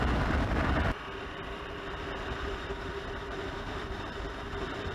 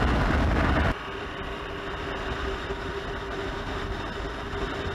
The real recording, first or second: second